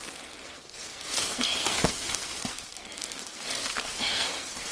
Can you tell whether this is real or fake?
fake